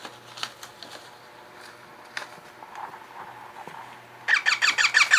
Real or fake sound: real